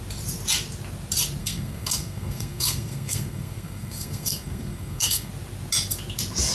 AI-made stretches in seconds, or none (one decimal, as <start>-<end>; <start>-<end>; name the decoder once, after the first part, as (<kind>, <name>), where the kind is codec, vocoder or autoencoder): 1.4-5.3 (codec, SNAC)